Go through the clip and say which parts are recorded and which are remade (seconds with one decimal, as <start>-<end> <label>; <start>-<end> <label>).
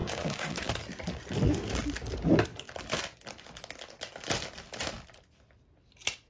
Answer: 0.0-0.7 remade; 0.7-6.3 recorded